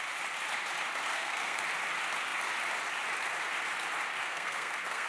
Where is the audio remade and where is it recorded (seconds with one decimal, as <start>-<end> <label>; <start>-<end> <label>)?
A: 0.0-1.1 recorded; 1.1-1.6 remade; 1.6-4.2 recorded; 4.2-5.1 remade